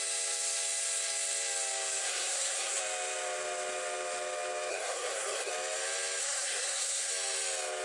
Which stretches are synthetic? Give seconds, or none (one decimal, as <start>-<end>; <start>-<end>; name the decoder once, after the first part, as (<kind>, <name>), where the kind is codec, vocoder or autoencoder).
2.0-2.8 (codec, SNAC); 4.7-5.5; 6.2-7.1